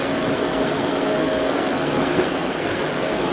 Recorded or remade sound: remade